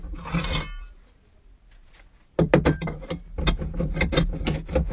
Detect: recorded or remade recorded